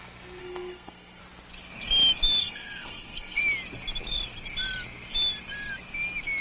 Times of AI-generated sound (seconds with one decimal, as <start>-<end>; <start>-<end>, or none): 0.4-1.2; 2.4-3.4